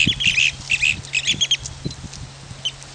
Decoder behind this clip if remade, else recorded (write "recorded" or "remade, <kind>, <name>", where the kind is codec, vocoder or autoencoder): recorded